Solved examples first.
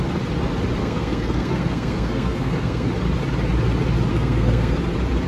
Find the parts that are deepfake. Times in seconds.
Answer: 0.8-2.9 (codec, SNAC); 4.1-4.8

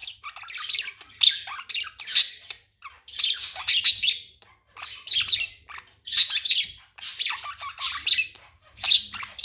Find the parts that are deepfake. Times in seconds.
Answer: 2.0-3.1 (vocoder, BigVGAN v2); 7.9-9.4

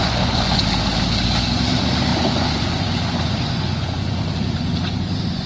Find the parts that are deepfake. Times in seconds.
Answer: 0.0-0.6 (vocoder, Vocos); 2.1-5.5